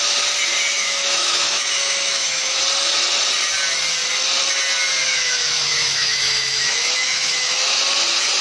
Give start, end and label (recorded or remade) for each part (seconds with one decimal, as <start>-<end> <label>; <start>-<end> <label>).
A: 0.0-0.7 recorded; 0.7-2.6 remade; 2.6-5.0 recorded; 5.0-7.8 remade; 7.8-8.4 recorded